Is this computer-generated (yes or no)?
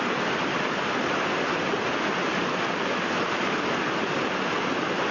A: no